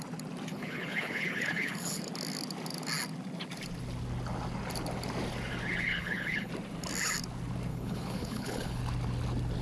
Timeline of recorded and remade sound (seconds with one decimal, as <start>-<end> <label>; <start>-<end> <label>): 0.0-0.5 recorded; 0.5-2.0 remade; 2.0-5.9 recorded; 5.9-6.5 remade; 6.5-7.7 recorded; 7.7-8.8 remade; 8.8-9.6 recorded